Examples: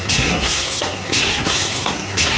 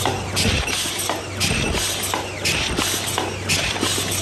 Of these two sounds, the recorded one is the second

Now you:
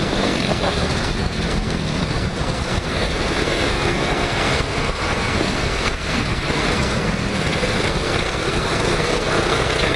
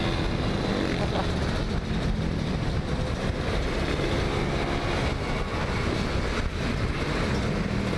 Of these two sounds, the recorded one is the second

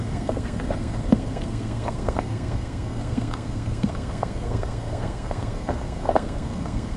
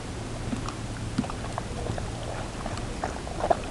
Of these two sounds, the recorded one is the second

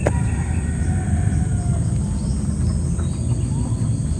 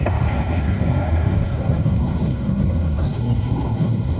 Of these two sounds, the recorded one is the first